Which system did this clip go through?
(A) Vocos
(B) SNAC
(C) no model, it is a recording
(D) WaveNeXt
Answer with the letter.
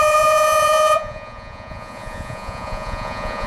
A